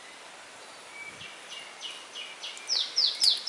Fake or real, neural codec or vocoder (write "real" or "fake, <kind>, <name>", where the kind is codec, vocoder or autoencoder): real